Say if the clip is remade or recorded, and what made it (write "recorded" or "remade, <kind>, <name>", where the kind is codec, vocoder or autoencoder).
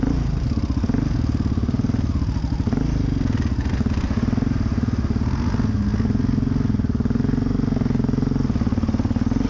recorded